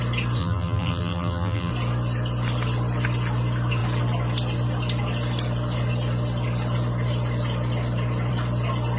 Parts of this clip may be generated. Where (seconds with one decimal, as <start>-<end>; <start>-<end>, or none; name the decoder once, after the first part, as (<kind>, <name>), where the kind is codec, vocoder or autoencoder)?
0.4-1.7 (vocoder, BigVGAN v2)